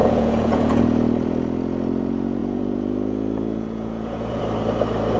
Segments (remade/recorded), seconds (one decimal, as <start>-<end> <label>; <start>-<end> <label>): 0.0-0.8 remade; 0.8-2.4 recorded; 2.4-4.4 remade; 4.4-5.2 recorded